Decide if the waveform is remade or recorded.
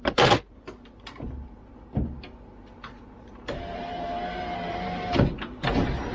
remade